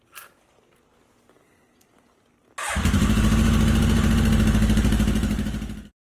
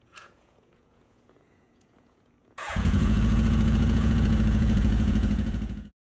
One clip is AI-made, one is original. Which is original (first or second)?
first